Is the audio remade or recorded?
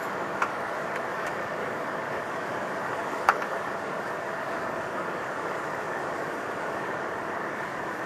remade